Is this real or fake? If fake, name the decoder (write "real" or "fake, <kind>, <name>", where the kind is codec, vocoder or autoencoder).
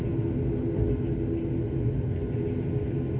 real